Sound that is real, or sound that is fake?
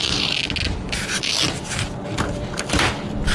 real